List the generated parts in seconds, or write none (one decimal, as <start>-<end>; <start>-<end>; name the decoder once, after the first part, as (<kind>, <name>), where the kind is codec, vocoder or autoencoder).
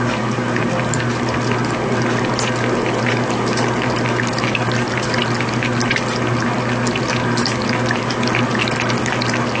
none